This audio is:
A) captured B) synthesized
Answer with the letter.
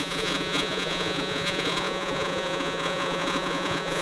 B